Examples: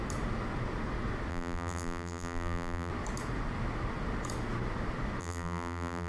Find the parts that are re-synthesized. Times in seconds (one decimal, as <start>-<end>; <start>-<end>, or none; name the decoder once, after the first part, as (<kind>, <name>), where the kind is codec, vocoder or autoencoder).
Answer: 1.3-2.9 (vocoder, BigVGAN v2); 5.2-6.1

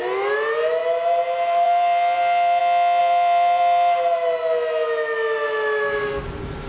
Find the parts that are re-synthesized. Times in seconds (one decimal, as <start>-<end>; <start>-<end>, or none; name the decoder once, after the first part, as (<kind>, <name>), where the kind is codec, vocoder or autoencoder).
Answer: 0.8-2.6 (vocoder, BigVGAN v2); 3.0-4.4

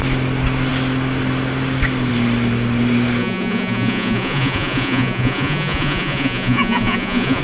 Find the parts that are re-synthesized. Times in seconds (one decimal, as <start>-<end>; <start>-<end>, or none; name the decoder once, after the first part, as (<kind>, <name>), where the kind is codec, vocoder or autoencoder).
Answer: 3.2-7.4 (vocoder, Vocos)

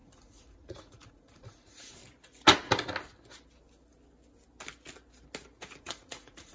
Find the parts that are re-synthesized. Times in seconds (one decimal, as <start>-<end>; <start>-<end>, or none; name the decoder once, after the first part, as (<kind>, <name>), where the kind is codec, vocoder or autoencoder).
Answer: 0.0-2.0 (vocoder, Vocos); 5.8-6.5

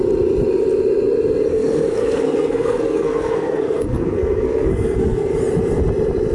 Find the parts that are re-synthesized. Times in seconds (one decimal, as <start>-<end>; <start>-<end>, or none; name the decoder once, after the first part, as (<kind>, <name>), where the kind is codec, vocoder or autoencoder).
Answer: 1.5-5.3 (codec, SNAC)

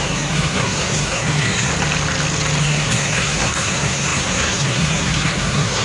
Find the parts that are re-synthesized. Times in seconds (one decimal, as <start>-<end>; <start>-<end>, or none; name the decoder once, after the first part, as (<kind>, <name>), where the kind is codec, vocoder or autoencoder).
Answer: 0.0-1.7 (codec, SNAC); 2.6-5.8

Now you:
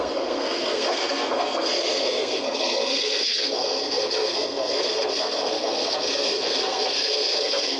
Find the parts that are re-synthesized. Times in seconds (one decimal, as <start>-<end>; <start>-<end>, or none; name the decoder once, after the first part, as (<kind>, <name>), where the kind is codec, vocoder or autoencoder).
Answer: 0.0-7.8 (codec, SNAC)

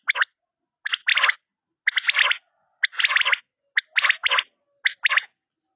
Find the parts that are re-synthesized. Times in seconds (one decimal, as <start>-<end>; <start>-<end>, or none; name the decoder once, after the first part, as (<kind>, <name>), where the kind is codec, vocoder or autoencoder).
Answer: none